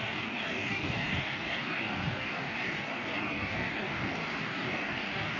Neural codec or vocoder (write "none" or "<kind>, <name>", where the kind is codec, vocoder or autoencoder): codec, DAC